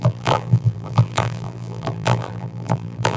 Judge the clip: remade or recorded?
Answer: remade